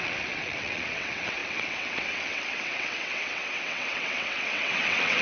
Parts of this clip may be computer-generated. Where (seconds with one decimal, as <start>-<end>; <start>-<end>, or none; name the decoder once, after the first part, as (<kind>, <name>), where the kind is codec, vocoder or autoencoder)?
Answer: 0.0-5.2 (vocoder, WaveNeXt)